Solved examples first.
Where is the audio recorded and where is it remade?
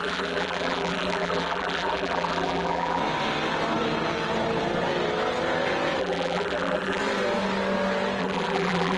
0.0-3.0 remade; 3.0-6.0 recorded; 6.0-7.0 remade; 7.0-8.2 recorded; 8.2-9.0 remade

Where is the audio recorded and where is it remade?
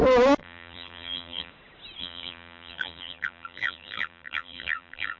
0.0-0.4 recorded; 0.4-1.5 remade; 1.5-2.0 recorded; 2.0-5.2 remade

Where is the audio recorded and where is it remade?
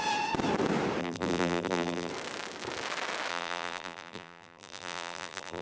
0.0-1.0 recorded; 1.0-2.1 remade; 2.1-3.3 recorded; 3.3-5.6 remade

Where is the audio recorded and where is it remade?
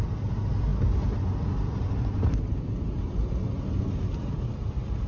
0.0-5.1 recorded